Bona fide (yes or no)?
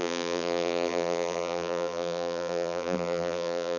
no